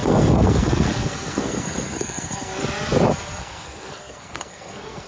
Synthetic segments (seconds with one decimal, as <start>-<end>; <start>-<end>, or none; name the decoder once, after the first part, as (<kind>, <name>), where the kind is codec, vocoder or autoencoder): 0.0-2.6 (codec, SNAC); 3.4-5.1